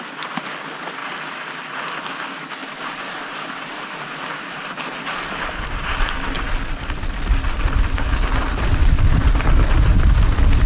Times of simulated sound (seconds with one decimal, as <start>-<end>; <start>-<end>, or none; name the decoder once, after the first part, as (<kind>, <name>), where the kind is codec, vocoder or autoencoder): none